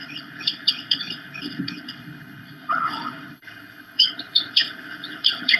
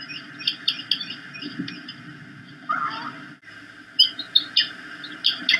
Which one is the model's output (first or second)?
first